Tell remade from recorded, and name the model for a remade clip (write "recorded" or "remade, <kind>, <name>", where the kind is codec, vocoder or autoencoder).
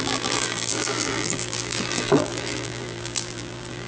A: remade, vocoder, BigVGAN v2